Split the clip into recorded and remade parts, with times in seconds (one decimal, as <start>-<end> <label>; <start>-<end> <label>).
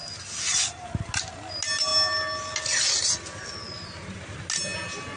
0.0-5.2 recorded